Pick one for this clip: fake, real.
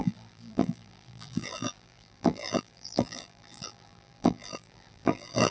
fake